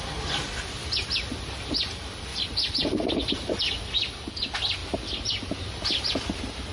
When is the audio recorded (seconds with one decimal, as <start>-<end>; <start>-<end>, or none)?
0.0-2.3; 3.6-4.8; 5.4-6.7